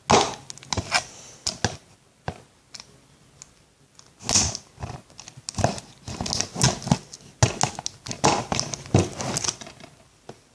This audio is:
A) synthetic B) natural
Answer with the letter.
B